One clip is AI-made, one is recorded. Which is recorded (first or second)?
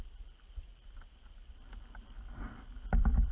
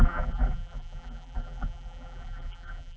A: first